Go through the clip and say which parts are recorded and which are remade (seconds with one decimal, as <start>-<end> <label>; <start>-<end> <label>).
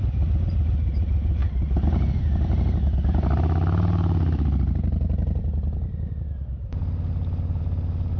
0.0-1.4 remade; 1.4-2.2 recorded; 2.2-8.2 remade